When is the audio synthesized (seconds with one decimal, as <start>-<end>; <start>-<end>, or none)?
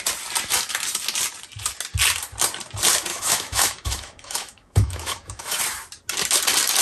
3.1-5.6